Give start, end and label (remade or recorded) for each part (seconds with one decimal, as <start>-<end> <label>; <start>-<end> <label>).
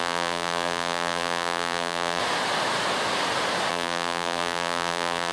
0.0-2.2 remade; 2.2-3.7 recorded; 3.7-5.3 remade